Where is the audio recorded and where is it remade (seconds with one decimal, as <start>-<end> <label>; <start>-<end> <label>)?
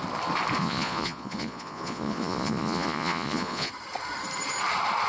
0.0-0.6 recorded; 0.6-3.7 remade; 3.7-5.1 recorded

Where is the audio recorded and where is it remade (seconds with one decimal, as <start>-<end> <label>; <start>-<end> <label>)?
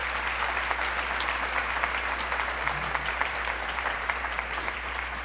0.0-3.1 recorded; 3.1-5.2 remade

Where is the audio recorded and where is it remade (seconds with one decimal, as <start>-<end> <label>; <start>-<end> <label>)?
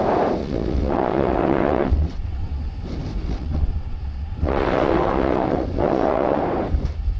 0.0-0.4 recorded; 0.4-2.7 remade; 2.7-3.2 recorded; 3.2-6.4 remade; 6.4-7.2 recorded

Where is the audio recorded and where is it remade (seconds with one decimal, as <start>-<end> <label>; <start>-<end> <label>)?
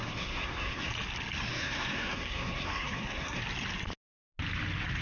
0.0-0.9 remade; 0.9-1.5 recorded; 1.5-3.4 remade; 3.4-5.0 recorded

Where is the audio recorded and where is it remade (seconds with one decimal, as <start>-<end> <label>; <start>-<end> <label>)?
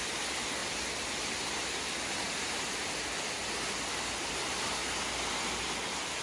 0.0-6.2 recorded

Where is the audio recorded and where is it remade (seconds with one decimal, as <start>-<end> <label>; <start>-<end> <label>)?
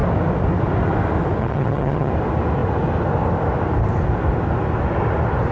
0.0-1.4 recorded; 1.4-2.1 remade; 2.1-5.5 recorded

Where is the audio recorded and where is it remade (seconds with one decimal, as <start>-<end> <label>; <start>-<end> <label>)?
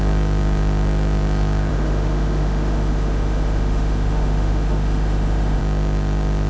0.0-1.7 recorded; 1.7-5.6 remade; 5.6-6.5 recorded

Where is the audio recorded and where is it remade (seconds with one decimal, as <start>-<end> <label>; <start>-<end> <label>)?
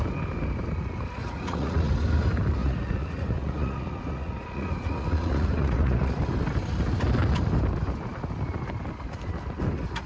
0.0-1.2 recorded; 1.2-1.9 remade; 1.9-2.6 recorded; 2.6-6.2 remade; 6.2-10.1 recorded